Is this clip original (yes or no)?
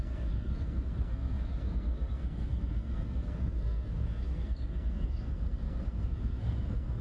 no